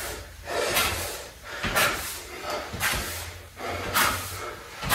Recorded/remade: recorded